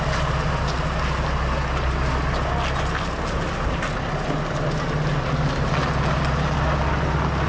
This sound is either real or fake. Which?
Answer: real